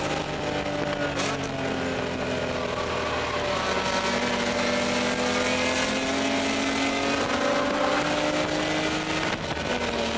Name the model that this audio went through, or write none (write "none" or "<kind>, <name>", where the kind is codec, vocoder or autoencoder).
none